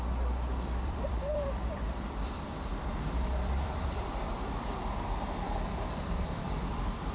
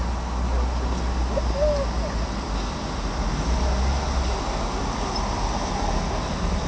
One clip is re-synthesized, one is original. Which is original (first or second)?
second